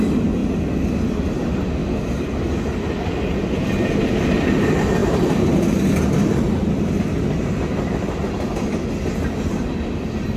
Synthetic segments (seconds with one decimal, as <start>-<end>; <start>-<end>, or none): none